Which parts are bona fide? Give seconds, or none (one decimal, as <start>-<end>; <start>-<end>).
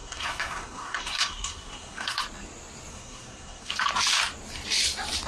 2.2-2.9; 3.7-5.3